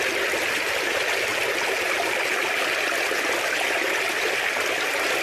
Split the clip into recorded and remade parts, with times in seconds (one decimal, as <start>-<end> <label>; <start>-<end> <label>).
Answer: 0.0-5.2 recorded